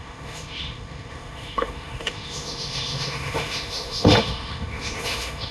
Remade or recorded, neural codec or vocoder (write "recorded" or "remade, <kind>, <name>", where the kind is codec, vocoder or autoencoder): remade, autoencoder, DAC-VAE